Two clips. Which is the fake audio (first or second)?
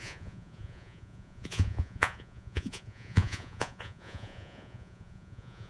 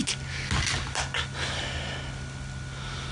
first